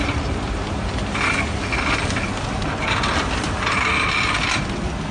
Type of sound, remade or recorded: recorded